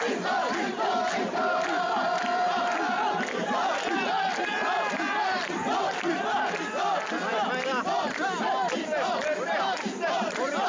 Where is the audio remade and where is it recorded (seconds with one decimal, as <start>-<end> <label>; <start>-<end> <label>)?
0.0-10.7 remade

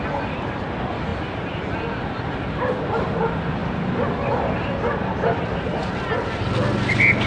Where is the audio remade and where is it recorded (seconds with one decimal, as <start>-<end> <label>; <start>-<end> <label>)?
0.0-1.1 recorded; 1.1-1.8 remade; 1.8-3.6 recorded; 3.6-4.3 remade; 4.3-7.3 recorded

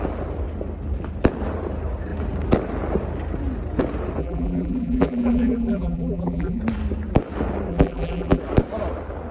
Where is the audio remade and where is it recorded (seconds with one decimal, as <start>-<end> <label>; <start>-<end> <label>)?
0.0-4.2 recorded; 4.2-6.6 remade; 6.6-7.7 recorded; 7.7-8.4 remade; 8.4-9.3 recorded

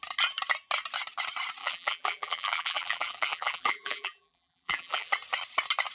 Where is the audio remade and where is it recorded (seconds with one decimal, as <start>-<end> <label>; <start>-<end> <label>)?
0.0-1.6 recorded; 1.6-5.1 remade; 5.1-5.9 recorded

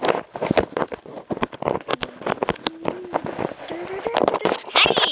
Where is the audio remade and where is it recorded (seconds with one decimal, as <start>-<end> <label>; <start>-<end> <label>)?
0.0-5.1 recorded

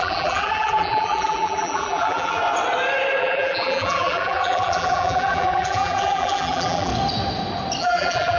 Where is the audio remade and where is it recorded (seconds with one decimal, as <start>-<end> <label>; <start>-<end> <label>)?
0.0-2.4 remade; 2.4-3.2 recorded; 3.2-6.9 remade; 6.9-7.8 recorded; 7.8-8.4 remade